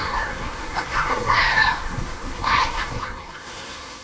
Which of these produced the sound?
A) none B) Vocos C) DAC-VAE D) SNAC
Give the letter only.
D